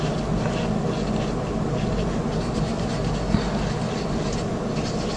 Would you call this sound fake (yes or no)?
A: no